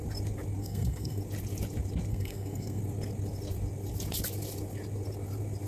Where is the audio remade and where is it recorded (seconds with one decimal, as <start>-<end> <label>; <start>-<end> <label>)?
0.0-0.6 recorded; 0.6-1.2 remade; 1.2-2.1 recorded; 2.1-2.8 remade; 2.8-5.7 recorded